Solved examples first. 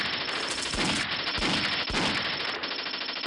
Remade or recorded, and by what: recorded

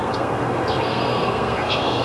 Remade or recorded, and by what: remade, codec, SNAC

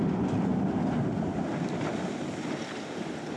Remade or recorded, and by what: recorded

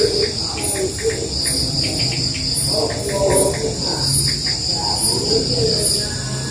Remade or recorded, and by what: recorded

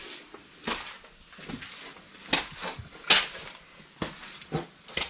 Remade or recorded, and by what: recorded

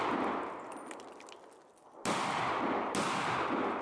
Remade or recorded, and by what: recorded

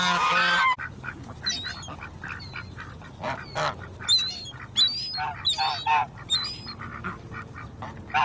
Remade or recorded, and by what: recorded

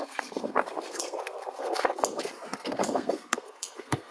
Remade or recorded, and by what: remade, codec, SNAC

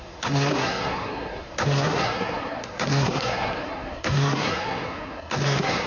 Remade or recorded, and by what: remade, codec, SNAC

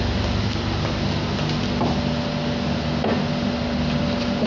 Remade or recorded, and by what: recorded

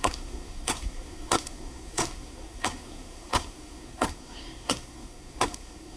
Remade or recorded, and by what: remade, codec, SNAC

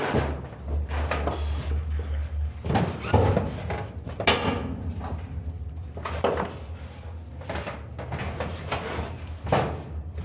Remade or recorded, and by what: recorded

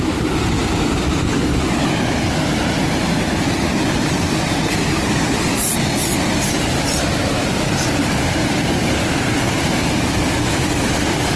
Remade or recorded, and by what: recorded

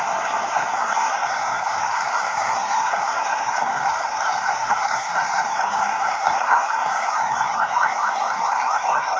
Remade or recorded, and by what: remade, codec, SNAC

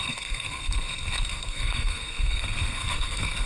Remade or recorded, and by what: remade, codec, SNAC